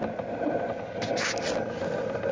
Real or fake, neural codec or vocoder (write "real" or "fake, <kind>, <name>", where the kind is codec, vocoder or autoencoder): real